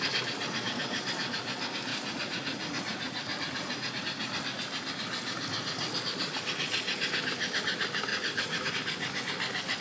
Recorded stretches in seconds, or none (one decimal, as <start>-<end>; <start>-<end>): 0.0-1.9; 4.0-8.1; 8.7-9.8